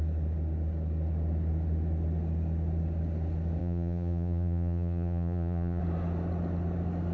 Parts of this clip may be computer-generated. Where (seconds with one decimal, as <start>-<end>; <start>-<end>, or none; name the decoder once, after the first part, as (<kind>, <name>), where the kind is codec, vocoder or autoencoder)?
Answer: 3.6-5.8 (vocoder, Vocos)